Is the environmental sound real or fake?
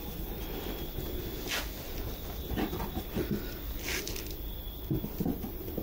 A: real